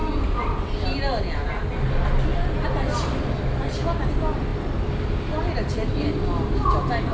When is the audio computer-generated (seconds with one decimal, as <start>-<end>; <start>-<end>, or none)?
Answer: none